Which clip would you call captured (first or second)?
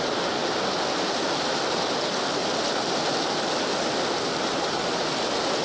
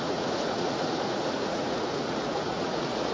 first